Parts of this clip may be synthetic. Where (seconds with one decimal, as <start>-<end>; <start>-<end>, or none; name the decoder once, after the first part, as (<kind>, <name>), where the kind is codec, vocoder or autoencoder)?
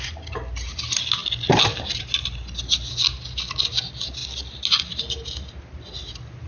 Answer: none